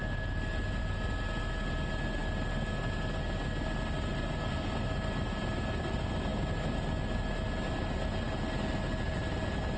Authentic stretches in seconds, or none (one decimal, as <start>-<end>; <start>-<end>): 0.0-9.8